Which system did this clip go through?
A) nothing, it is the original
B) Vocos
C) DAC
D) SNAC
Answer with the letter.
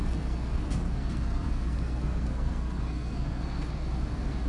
D